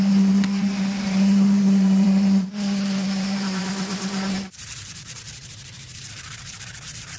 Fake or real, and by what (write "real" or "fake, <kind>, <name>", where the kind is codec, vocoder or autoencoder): fake, vocoder, BigVGAN v2